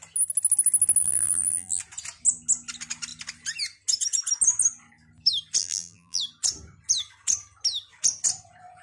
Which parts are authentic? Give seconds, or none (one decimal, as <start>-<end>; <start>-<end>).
0.0-1.0; 1.8-5.6; 6.2-8.8